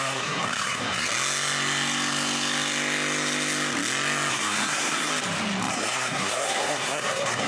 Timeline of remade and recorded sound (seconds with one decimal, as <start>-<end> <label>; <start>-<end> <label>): 0.0-1.1 remade; 1.1-4.3 recorded; 4.3-5.1 remade; 5.1-5.7 recorded; 5.7-7.5 remade